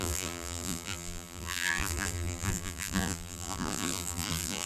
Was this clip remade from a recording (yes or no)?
yes